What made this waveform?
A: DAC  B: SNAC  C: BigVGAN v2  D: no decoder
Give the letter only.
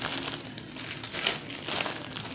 D